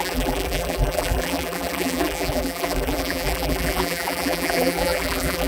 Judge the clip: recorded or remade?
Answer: remade